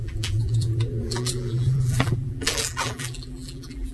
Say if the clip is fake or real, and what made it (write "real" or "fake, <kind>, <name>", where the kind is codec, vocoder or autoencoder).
fake, vocoder, BigVGAN v2